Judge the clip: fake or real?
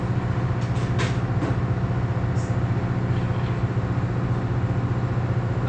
real